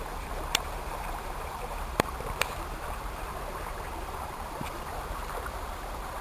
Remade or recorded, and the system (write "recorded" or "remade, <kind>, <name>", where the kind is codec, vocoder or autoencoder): remade, vocoder, BigVGAN v2